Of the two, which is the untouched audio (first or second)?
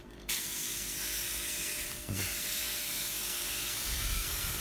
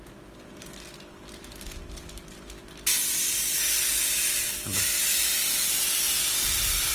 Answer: second